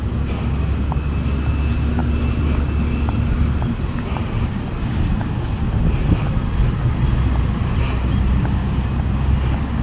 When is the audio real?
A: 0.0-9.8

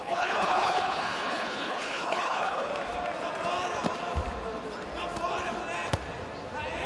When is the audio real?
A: 2.7-6.9

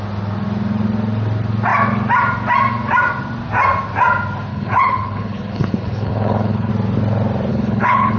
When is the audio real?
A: 0.0-4.5; 6.7-7.5

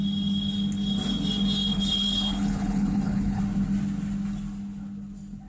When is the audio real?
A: 0.0-1.7; 3.4-5.5

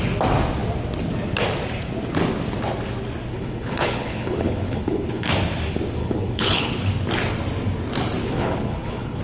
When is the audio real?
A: 0.0-3.3; 5.3-6.0; 6.8-8.2

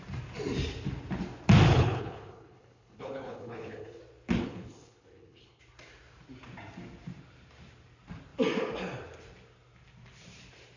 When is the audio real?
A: 0.0-1.7; 4.0-4.4; 5.6-10.8